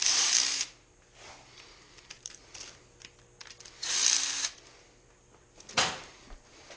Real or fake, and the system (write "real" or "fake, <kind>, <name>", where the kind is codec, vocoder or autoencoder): real